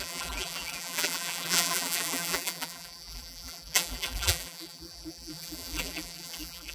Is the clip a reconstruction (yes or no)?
yes